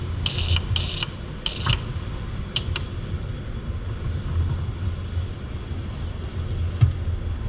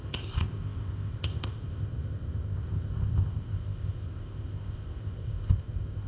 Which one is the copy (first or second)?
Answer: second